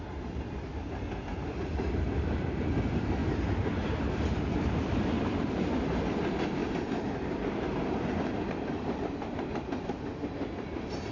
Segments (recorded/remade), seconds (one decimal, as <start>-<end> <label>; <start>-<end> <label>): 0.0-3.2 remade; 3.2-4.0 recorded; 4.0-11.1 remade